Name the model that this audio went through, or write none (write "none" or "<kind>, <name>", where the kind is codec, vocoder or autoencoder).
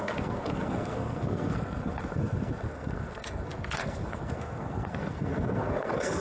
codec, SNAC